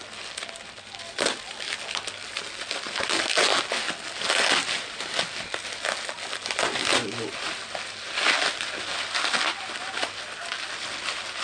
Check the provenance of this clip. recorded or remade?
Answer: recorded